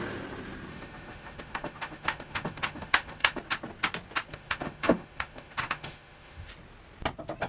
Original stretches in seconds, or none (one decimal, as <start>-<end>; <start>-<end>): 0.0-0.7; 3.4-4.3; 6.5-7.5

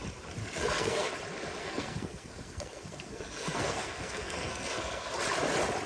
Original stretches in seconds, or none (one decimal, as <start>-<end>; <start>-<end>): 0.0-0.4; 1.1-1.6; 5.1-5.9

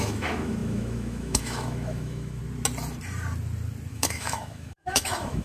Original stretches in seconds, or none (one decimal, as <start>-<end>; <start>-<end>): 2.4-3.9